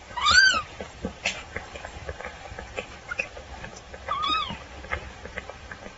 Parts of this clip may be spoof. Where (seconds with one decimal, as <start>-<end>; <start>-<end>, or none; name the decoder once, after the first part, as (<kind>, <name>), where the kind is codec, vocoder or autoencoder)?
0.0-6.0 (vocoder, BigVGAN v2)

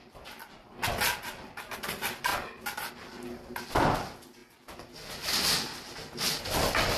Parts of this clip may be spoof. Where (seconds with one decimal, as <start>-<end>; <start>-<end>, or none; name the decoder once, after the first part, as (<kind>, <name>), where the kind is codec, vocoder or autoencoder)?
0.0-0.9 (vocoder, BigVGAN v2); 2.3-2.9

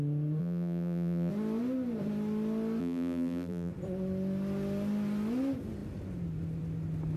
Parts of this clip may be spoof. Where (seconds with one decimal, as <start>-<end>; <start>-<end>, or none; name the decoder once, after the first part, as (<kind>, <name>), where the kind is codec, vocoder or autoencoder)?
0.4-1.3 (vocoder, BigVGAN v2); 2.8-3.7

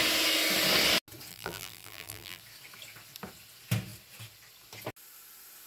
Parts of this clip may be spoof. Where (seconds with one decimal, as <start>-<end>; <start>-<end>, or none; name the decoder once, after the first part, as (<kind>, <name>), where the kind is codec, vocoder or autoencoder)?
1.3-2.4 (vocoder, BigVGAN v2)